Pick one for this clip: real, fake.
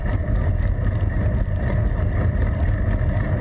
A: real